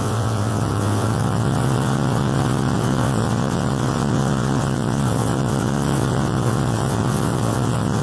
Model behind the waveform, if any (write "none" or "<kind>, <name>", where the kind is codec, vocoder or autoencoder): vocoder, WaveNeXt